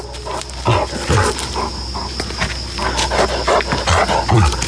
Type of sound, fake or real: real